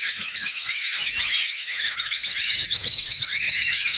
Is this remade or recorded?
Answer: remade